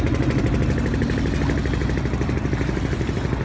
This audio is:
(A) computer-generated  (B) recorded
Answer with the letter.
B